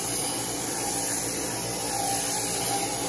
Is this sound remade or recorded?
recorded